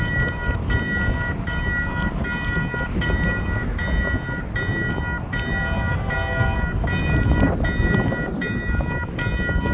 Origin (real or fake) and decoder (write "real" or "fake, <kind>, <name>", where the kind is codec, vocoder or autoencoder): real